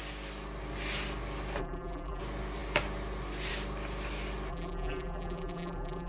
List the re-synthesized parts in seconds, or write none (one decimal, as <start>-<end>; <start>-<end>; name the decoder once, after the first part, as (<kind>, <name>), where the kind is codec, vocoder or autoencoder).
1.6-2.2 (vocoder, BigVGAN v2); 4.5-6.1